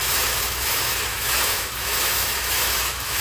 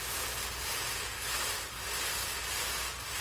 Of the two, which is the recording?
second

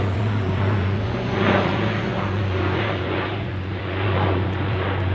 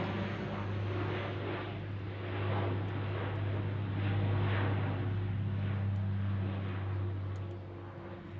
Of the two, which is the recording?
second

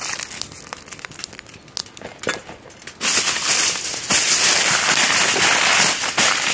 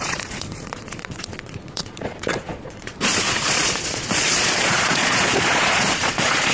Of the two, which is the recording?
first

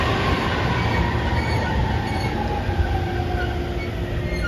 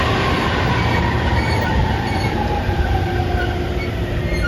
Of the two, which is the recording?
first